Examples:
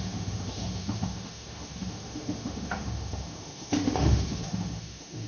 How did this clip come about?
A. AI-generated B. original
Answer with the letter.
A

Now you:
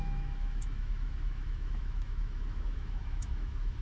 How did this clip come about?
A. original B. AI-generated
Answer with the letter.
B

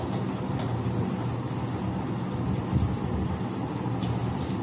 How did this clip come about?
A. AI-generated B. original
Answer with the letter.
B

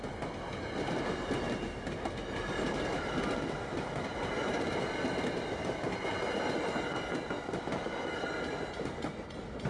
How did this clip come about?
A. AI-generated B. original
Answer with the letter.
B